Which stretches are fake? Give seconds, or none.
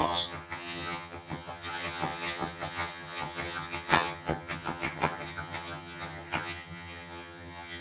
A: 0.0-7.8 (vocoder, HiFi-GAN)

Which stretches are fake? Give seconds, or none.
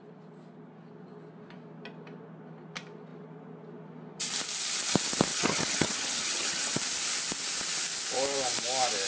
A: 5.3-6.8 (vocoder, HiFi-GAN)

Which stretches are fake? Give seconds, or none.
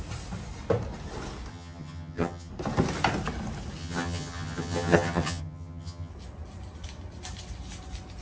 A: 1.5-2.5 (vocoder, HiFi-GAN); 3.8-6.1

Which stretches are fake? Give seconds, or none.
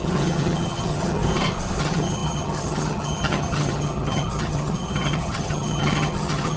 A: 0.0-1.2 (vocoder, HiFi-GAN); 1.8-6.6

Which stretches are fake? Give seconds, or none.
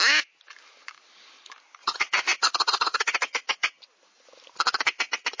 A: 1.8-3.8 (vocoder, HiFi-GAN)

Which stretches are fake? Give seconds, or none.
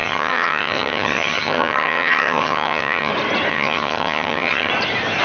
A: 0.0-3.1 (vocoder, HiFi-GAN); 3.5-4.7